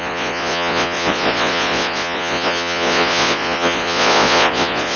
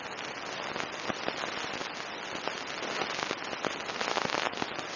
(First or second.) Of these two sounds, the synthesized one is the first